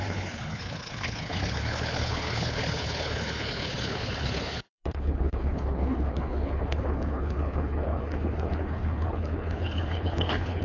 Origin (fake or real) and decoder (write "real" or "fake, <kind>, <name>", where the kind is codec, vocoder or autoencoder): fake, codec, HILCodec